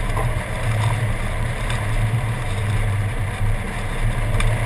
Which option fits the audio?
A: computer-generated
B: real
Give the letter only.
A